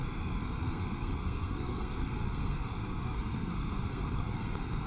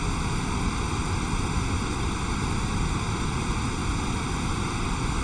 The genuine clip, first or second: second